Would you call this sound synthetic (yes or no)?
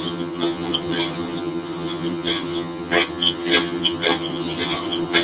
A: yes